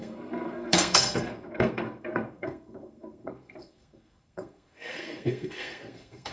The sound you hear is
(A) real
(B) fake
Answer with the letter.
B